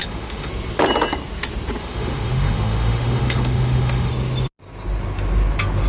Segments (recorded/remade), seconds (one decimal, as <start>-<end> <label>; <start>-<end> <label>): 0.0-0.5 remade; 0.5-1.8 recorded; 1.8-4.1 remade; 4.1-5.9 recorded